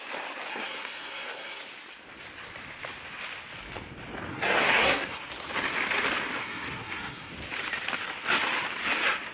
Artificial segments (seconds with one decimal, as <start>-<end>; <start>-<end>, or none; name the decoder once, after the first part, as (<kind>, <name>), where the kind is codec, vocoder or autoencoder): 0.5-1.6 (codec, SNAC); 4.3-5.2; 6.4-7.3